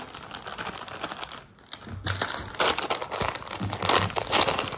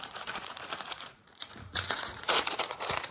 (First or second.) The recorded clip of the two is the first